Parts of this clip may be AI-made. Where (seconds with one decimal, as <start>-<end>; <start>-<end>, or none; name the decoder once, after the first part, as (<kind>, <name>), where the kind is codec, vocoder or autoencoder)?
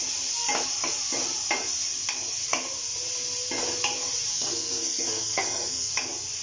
4.3-5.9 (codec, SNAC)